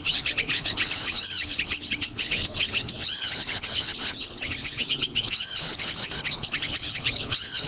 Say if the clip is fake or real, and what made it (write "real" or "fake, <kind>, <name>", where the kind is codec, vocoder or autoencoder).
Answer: fake, codec, HILCodec